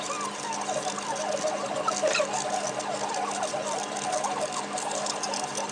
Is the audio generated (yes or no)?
no